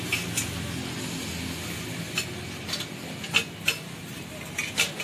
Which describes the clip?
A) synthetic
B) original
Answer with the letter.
B